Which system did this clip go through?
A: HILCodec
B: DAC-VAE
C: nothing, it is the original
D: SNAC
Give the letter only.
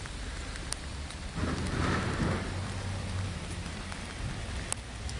C